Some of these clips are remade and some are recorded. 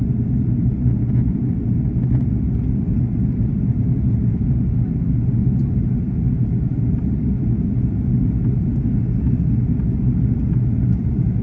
recorded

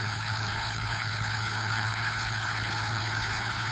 remade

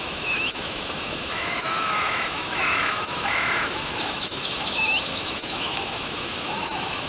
remade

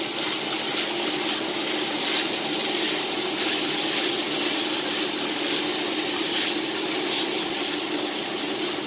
recorded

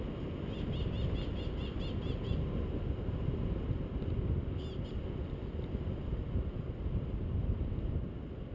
recorded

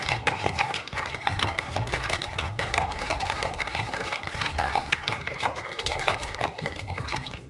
remade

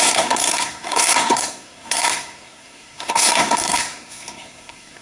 remade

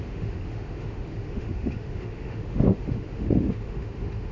remade